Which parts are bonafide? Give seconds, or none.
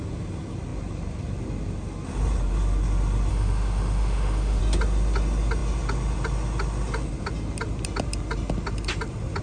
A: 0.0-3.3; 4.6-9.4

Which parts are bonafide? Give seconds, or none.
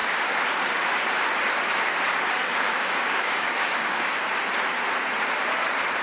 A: 0.0-2.4; 4.1-6.0